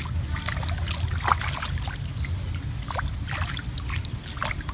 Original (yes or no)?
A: yes